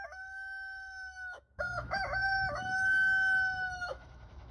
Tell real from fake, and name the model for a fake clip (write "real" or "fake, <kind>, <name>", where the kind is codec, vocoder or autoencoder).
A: fake, autoencoder, DAC-VAE